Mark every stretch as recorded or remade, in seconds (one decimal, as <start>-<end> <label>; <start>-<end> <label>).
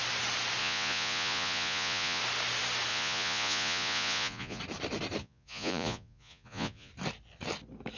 0.0-0.6 recorded; 0.6-2.2 remade; 2.2-2.9 recorded; 2.9-4.6 remade; 4.6-5.2 recorded; 5.2-6.9 remade; 6.9-8.0 recorded